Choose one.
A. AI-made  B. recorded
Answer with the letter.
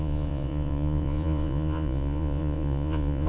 A